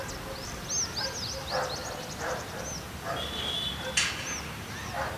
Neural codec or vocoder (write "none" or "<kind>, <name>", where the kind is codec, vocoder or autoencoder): none